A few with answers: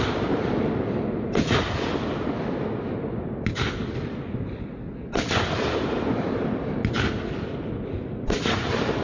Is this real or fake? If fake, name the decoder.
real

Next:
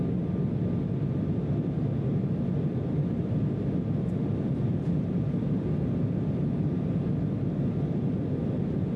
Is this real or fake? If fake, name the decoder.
real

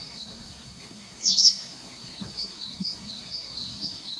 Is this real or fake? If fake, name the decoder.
fake, codec, SNAC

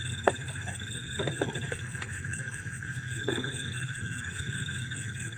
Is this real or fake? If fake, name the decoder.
fake, codec, SNAC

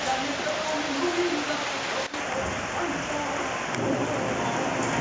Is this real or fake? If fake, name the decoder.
real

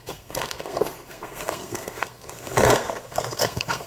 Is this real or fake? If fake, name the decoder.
fake, codec, SNAC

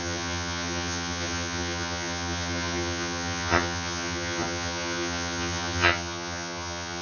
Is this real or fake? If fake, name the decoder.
fake, vocoder, HiFi-GAN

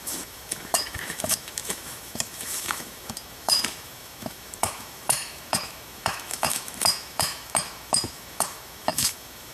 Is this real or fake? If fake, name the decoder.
fake, autoencoder, DAC-VAE